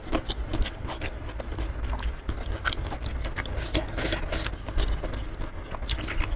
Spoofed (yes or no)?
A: no